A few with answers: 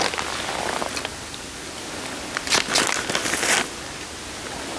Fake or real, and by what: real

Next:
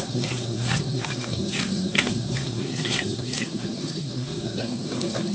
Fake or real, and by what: fake, codec, SNAC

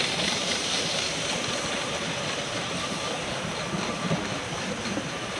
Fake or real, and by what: fake, vocoder, BigVGAN v2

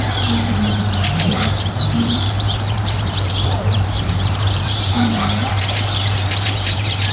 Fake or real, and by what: fake, vocoder, BigVGAN v2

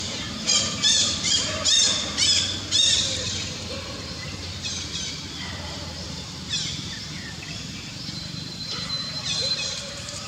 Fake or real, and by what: fake, vocoder, BigVGAN v2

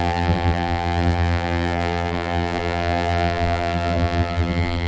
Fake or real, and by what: fake, vocoder, BigVGAN v2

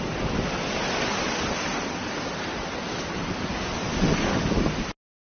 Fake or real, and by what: real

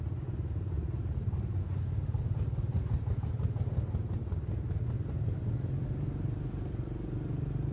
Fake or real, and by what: real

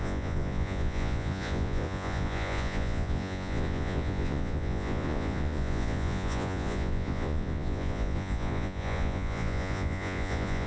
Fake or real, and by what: fake, vocoder, Vocos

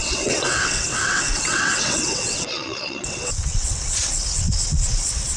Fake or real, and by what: fake, vocoder, WaveNeXt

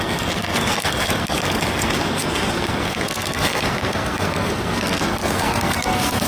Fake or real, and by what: fake, codec, SNAC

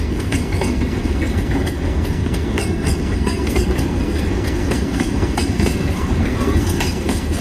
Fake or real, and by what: fake, codec, SNAC